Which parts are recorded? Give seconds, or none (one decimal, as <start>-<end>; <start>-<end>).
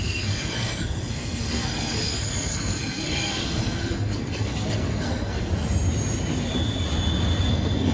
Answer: 5.5-7.5